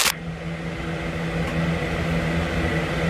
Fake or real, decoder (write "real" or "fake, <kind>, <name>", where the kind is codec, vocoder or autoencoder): real